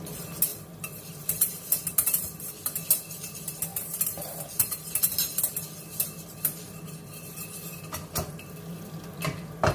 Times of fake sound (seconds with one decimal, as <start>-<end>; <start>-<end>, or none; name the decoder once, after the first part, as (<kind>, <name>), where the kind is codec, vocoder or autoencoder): 0.5-1.8 (vocoder, BigVGAN v2); 3.7-5.0